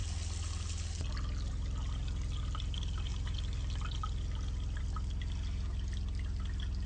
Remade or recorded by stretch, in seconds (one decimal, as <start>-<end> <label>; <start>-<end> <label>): 0.0-6.9 recorded